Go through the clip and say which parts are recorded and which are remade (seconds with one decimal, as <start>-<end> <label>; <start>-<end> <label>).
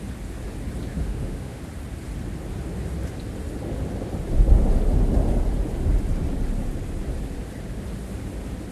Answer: 0.0-0.9 recorded; 0.9-1.6 remade; 1.6-8.7 recorded